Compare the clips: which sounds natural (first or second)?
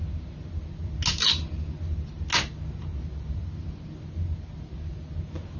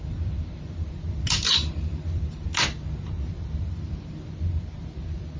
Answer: first